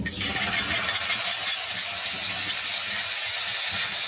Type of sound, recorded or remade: recorded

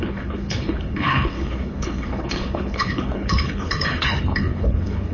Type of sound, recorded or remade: remade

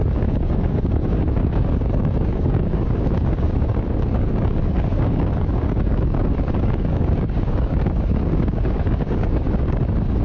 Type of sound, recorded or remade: remade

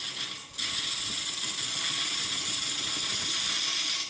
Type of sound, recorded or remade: recorded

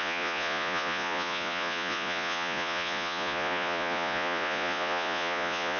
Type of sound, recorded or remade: remade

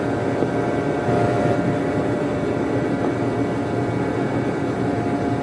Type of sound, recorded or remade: recorded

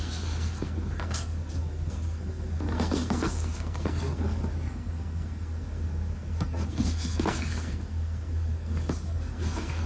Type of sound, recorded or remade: remade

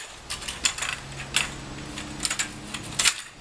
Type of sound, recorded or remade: recorded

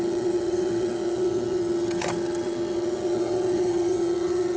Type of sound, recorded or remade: remade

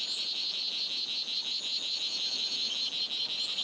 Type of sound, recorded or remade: recorded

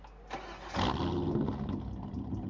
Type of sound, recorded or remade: recorded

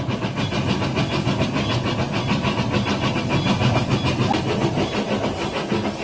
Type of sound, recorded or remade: recorded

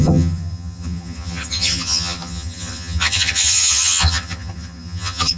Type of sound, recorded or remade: remade